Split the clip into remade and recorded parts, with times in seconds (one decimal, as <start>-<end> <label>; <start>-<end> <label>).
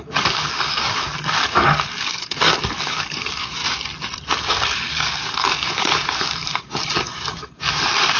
0.0-3.6 remade; 3.6-4.3 recorded; 4.3-8.2 remade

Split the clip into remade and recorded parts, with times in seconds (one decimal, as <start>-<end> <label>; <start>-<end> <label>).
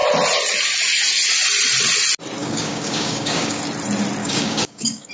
0.0-2.4 recorded; 2.4-3.6 remade; 3.6-4.2 recorded; 4.2-5.1 remade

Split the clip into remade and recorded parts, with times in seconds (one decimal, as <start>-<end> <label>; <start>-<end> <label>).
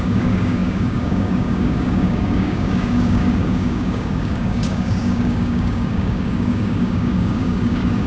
0.0-8.1 remade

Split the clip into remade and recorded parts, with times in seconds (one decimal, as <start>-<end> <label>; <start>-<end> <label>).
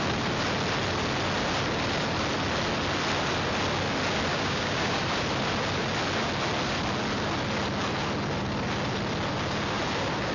0.0-4.3 recorded; 4.3-5.0 remade; 5.0-10.3 recorded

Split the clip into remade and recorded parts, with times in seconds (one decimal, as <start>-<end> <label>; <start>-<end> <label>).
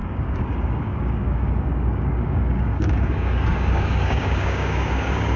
0.0-5.4 remade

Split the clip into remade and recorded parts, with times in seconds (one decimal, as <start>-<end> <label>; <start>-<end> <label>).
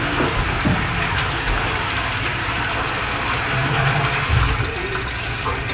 0.0-5.7 recorded